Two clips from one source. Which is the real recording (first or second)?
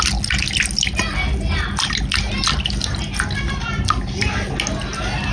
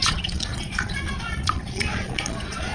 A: first